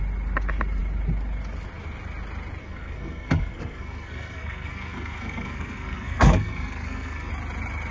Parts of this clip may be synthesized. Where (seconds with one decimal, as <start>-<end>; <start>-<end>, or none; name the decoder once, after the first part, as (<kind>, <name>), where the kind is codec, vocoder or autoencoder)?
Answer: 2.6-7.3 (codec, SNAC)